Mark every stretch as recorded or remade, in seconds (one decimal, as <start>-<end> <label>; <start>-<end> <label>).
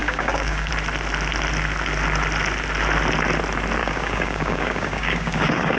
0.0-0.7 remade; 0.7-3.8 recorded; 3.8-5.8 remade